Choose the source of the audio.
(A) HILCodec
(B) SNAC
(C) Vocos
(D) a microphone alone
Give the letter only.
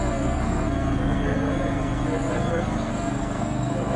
B